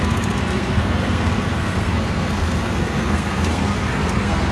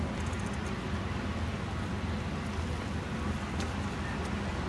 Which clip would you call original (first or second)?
second